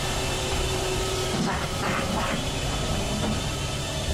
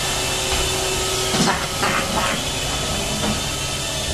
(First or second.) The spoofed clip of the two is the first